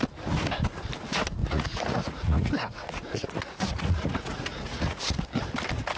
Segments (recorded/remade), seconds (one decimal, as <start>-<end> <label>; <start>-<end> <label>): 0.0-1.4 recorded; 1.4-5.0 remade; 5.0-6.0 recorded